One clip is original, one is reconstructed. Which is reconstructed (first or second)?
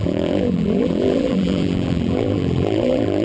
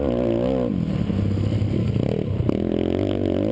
first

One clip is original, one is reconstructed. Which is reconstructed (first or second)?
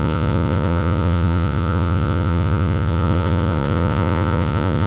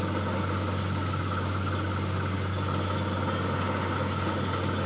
first